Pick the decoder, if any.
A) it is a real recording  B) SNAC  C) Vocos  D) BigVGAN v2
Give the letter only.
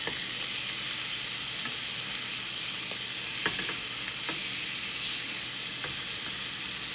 A